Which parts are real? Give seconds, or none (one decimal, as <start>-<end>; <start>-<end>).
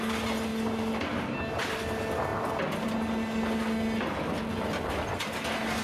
0.0-5.8